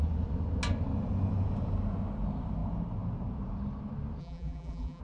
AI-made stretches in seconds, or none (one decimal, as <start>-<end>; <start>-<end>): 4.2-5.0